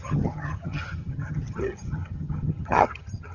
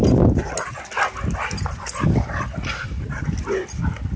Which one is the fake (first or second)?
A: first